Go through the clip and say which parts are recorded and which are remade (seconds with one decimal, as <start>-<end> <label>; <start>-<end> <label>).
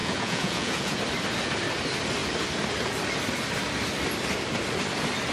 0.0-1.0 remade; 1.0-5.3 recorded